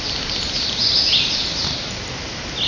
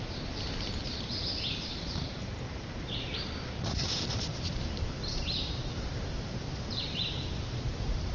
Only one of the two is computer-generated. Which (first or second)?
second